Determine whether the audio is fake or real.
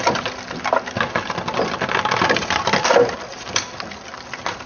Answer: real